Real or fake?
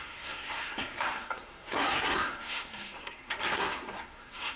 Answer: fake